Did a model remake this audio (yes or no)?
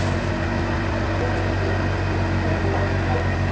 no